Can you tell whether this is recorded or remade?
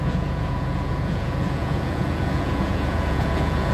remade